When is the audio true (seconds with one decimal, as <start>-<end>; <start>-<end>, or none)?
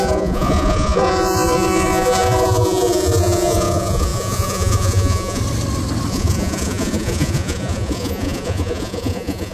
5.4-6.1